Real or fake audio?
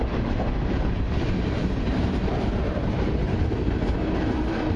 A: fake